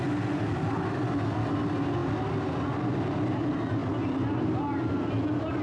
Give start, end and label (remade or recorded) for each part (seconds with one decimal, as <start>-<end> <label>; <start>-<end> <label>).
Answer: 0.0-5.6 recorded